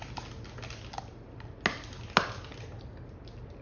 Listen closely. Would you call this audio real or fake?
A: real